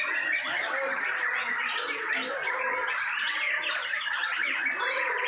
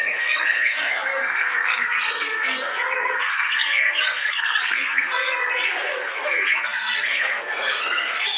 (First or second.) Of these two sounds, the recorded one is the first